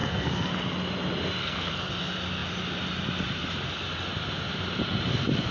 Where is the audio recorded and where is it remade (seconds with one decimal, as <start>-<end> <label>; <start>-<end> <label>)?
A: 0.0-0.5 remade; 0.5-1.4 recorded; 1.4-1.9 remade; 1.9-5.5 recorded